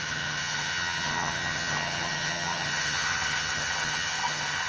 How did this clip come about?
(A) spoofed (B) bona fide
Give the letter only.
A